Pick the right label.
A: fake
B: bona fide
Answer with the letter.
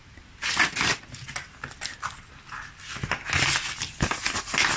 B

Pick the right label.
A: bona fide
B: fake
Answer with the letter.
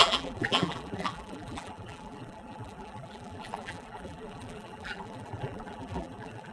B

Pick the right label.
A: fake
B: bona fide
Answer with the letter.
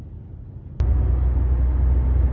B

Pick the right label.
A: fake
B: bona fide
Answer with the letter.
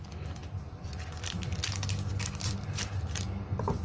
A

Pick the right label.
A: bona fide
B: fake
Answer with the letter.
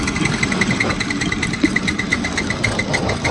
B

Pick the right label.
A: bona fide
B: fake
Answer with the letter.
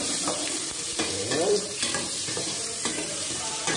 B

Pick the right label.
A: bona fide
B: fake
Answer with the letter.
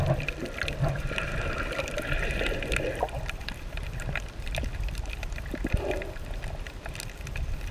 A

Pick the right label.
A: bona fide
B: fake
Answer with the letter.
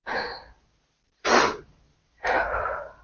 A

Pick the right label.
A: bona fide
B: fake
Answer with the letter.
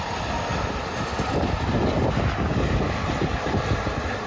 A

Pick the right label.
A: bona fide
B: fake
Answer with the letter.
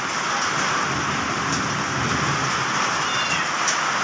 B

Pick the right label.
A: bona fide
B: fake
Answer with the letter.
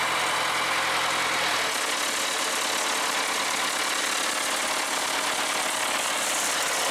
A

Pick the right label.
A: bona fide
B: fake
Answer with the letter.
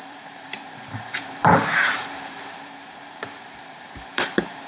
B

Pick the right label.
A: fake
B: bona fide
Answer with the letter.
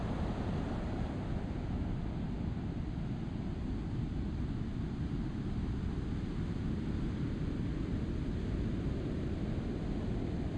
B